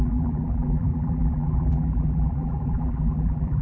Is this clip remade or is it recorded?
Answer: remade